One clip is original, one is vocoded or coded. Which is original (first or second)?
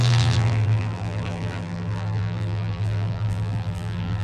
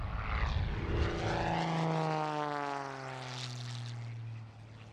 second